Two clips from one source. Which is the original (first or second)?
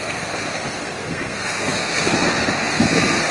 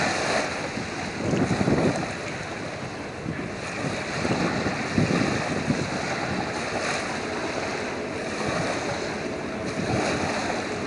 second